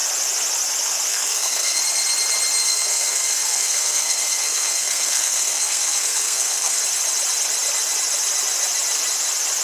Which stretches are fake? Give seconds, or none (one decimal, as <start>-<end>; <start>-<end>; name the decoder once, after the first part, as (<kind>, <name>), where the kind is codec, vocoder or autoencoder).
1.1-1.8 (codec, SNAC); 2.6-6.8